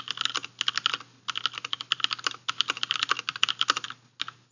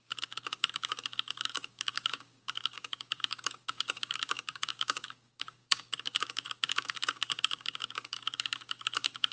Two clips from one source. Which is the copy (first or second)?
second